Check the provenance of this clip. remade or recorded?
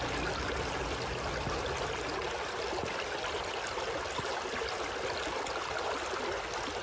recorded